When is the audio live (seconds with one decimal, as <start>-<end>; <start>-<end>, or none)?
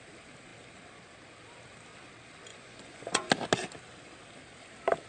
0.0-2.5; 3.3-5.1